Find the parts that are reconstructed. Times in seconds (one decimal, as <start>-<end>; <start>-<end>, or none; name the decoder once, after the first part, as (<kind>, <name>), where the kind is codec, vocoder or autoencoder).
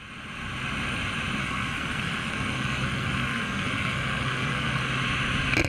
1.4-4.8 (codec, SNAC)